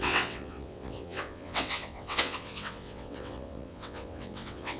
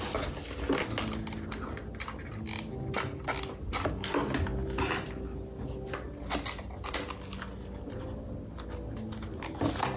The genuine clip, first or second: second